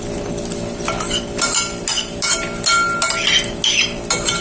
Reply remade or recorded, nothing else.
recorded